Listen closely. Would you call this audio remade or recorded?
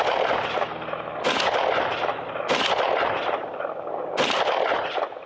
recorded